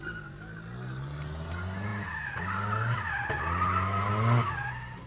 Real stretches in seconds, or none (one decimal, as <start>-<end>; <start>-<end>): 0.0-5.1